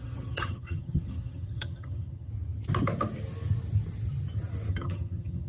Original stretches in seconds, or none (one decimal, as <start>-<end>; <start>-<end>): 2.3-4.7